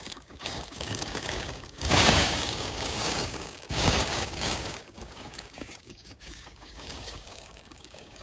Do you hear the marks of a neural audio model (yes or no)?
yes